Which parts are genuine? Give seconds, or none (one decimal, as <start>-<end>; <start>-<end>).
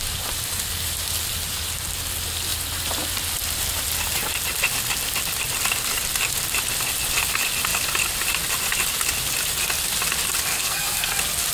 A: 0.0-10.5; 11.1-11.5